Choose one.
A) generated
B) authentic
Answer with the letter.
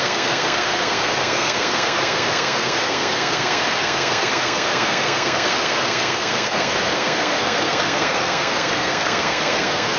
A